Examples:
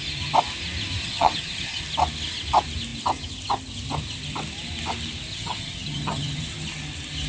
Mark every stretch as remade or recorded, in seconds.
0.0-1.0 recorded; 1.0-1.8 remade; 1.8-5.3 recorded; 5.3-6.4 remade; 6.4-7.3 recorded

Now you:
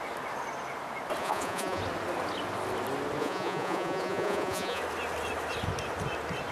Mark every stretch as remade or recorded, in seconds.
0.0-1.2 recorded; 1.2-1.8 remade; 1.8-3.2 recorded; 3.2-4.8 remade; 4.8-6.5 recorded

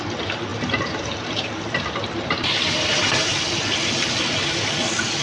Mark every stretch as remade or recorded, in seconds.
0.0-0.5 recorded; 0.5-3.4 remade; 3.4-5.2 recorded

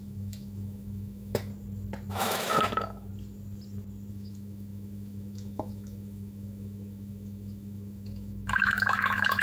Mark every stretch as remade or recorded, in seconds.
0.0-1.5 remade; 1.5-2.1 recorded; 2.1-3.1 remade; 3.1-4.1 recorded; 4.1-9.4 remade

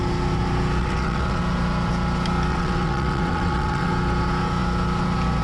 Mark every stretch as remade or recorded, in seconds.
0.0-0.8 recorded; 0.8-1.4 remade; 1.4-2.5 recorded; 2.5-3.9 remade; 3.9-5.4 recorded

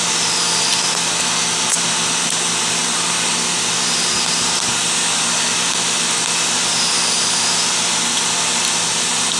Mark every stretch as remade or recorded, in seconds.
0.0-9.4 recorded